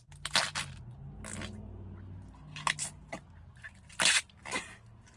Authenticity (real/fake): real